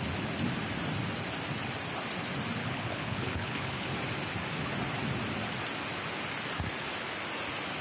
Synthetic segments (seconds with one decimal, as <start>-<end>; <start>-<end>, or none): 2.6-3.9